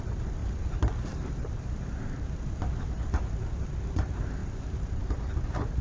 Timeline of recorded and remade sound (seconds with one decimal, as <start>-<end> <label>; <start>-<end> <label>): 0.0-5.8 remade